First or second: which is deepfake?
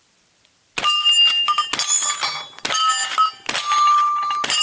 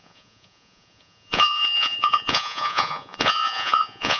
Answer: second